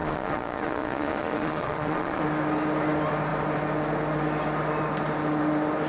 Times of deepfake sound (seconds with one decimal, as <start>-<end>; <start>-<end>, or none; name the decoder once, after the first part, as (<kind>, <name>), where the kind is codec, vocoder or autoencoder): 0.0-2.2 (vocoder, Vocos)

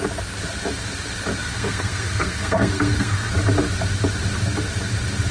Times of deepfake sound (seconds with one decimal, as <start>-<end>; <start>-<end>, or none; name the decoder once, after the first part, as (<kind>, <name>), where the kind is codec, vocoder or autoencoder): 1.4-3.3 (codec, SNAC)

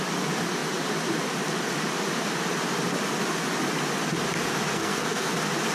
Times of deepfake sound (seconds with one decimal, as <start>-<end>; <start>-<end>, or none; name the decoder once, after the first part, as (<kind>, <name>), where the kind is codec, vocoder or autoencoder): 4.7-5.3 (codec, SNAC)

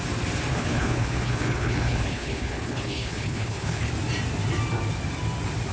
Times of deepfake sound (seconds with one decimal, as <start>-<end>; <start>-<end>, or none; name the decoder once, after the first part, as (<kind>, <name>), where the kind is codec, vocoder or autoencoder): 0.5-3.9 (codec, HILCodec)